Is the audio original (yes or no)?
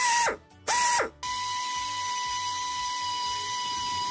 yes